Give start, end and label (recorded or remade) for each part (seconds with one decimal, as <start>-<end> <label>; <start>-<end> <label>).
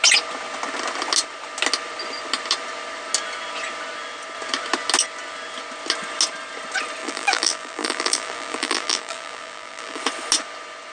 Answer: 0.0-7.0 recorded; 7.0-10.0 remade; 10.0-10.9 recorded